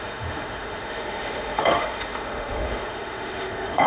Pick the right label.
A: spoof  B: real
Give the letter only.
A